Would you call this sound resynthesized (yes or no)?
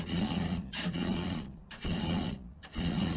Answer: yes